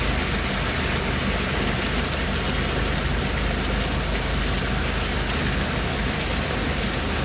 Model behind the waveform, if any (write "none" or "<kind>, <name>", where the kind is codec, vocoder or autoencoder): none